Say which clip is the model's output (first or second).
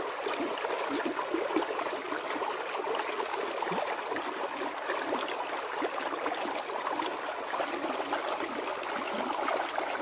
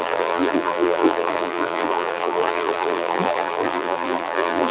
second